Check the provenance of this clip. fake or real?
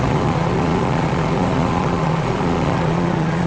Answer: fake